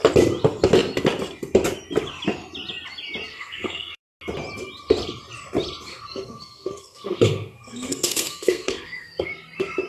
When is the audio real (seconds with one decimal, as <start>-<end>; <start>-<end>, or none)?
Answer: 0.0-3.3; 4.0-5.9; 9.3-9.9